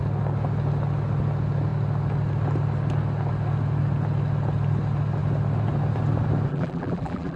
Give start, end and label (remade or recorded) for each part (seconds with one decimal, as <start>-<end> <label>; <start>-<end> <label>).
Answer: 0.0-6.5 recorded; 6.5-7.4 remade